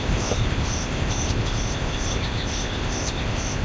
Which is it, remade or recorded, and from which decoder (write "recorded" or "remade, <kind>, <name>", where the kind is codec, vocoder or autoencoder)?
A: remade, codec, ZipCodec